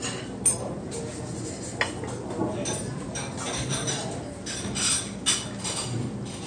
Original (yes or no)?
yes